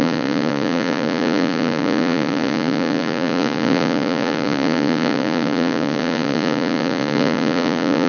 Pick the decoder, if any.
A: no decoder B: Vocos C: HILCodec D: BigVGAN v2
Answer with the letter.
B